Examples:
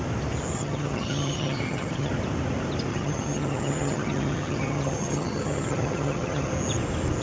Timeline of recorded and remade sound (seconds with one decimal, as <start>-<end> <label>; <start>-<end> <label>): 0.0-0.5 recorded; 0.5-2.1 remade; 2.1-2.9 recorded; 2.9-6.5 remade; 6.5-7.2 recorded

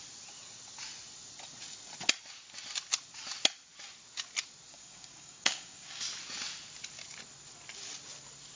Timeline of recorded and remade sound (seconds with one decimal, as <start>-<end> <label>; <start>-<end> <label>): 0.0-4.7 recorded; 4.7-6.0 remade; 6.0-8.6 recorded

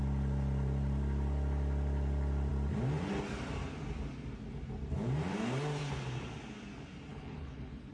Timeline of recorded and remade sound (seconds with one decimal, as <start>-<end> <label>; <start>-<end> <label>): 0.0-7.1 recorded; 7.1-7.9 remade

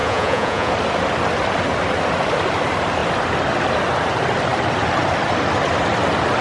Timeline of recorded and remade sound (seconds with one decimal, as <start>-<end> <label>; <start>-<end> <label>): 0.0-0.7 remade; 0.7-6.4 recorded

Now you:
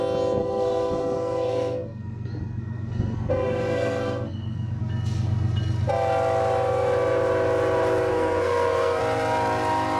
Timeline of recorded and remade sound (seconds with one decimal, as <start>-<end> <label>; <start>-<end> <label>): 0.0-0.4 recorded; 0.4-4.8 remade; 4.8-8.1 recorded; 8.1-9.0 remade; 9.0-10.0 recorded

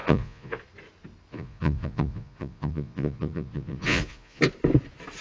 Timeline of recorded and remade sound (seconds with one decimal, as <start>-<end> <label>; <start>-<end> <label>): 0.0-0.6 remade; 0.6-1.3 recorded; 1.3-4.4 remade; 4.4-5.2 recorded

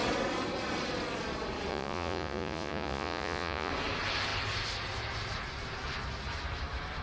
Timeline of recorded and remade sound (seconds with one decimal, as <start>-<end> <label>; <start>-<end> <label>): 0.0-1.7 recorded; 1.7-3.7 remade; 3.7-7.0 recorded